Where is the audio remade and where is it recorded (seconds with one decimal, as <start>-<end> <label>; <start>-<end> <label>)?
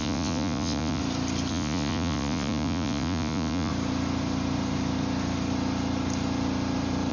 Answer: 0.0-1.0 remade; 1.0-1.5 recorded; 1.5-3.7 remade; 3.7-7.1 recorded